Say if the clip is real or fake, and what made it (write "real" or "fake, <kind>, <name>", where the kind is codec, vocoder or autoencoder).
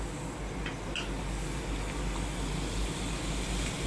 real